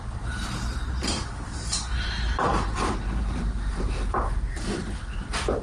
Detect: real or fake fake